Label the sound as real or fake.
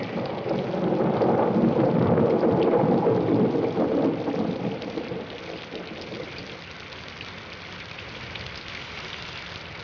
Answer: real